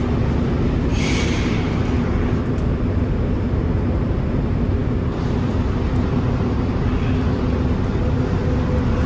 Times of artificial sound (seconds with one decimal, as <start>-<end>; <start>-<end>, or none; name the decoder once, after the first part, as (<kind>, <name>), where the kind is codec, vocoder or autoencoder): 0.9-3.6 (vocoder, BigVGAN v2)